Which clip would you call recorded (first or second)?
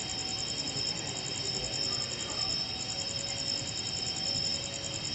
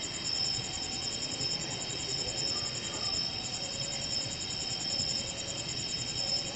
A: first